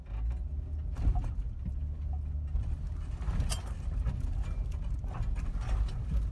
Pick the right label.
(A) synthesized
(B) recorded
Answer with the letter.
B